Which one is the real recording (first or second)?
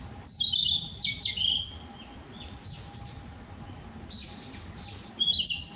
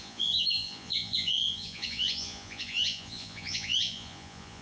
first